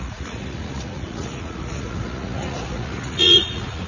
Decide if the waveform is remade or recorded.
remade